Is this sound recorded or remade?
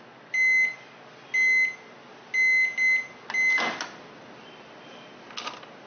recorded